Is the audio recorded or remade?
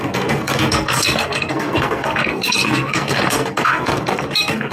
remade